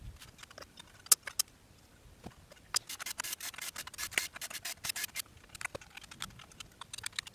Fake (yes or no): no